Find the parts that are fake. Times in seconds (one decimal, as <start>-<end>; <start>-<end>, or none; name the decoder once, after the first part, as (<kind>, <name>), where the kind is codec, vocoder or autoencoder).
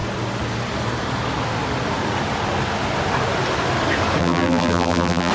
4.2-5.3 (vocoder, BigVGAN v2)